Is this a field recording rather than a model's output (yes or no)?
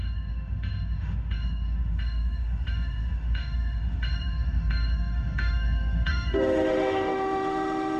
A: no